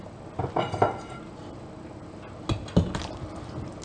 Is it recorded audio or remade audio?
recorded